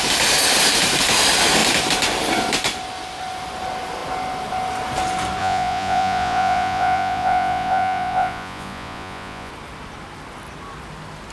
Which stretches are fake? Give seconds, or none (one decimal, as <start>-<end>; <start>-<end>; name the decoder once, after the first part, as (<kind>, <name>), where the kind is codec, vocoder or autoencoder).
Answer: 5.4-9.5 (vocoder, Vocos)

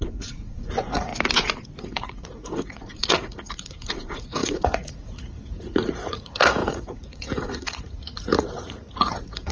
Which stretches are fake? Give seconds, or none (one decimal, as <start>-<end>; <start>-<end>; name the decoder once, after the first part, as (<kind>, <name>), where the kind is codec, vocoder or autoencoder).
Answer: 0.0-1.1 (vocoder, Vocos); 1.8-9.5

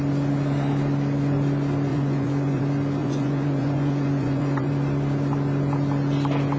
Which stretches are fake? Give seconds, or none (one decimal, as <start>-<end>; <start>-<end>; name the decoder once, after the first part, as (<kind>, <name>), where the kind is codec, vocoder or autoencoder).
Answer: 1.9-2.6 (vocoder, Vocos); 3.0-4.7

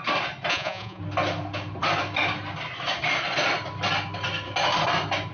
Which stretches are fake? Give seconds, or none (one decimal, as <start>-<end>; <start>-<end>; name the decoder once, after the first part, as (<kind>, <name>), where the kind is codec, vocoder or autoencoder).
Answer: 0.5-1.0 (vocoder, Vocos)

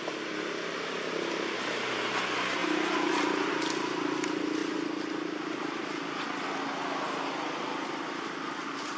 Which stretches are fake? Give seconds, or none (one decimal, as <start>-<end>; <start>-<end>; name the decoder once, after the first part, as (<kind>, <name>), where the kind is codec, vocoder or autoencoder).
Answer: none

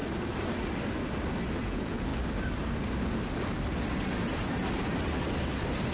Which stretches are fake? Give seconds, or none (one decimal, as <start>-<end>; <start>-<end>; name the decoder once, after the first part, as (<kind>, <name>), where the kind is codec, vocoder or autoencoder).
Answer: 1.6-2.1 (vocoder, Vocos)

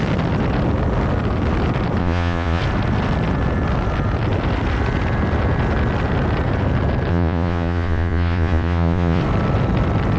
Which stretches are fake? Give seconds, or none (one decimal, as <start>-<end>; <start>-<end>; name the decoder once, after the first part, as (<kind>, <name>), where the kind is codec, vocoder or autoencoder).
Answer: 2.0-2.6 (vocoder, Vocos); 7.1-9.2